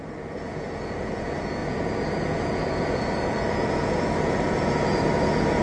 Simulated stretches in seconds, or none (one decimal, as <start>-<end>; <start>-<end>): 0.0-5.6